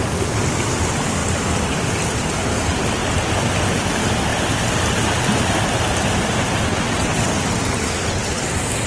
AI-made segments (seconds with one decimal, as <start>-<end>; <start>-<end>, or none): 6.7-7.3